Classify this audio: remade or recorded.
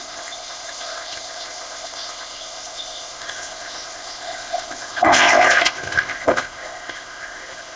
remade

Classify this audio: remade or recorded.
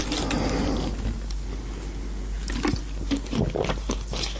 recorded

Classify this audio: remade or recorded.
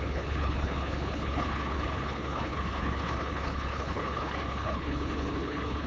remade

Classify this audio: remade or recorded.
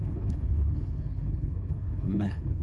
remade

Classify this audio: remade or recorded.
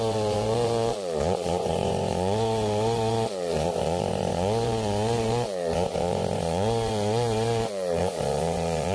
remade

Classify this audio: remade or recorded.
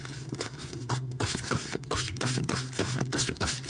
remade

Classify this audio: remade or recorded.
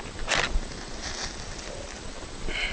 recorded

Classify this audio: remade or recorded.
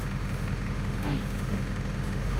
remade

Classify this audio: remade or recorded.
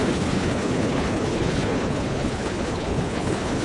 remade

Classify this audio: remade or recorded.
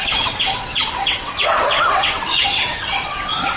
remade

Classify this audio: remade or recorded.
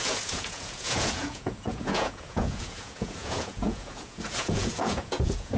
remade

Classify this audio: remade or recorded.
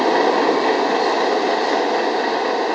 recorded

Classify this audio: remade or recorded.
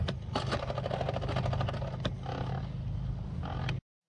recorded